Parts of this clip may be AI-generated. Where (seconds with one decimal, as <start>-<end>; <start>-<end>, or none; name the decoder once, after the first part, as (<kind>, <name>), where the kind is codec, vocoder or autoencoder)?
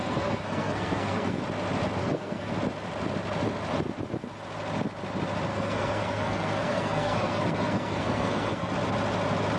0.0-1.4 (codec, SNAC); 2.0-2.5; 5.5-8.7